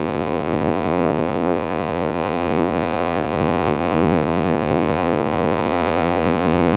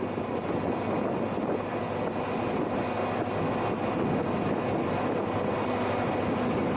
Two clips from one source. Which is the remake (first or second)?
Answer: first